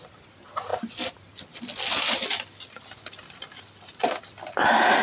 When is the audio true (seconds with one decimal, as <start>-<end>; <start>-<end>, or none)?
0.0-5.0